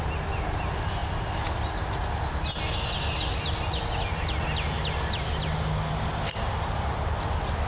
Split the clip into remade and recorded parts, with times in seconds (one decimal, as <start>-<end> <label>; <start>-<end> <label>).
0.0-7.7 recorded